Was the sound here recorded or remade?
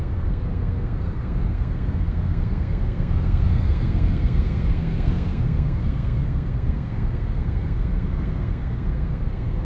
remade